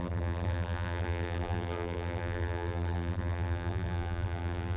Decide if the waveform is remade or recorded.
remade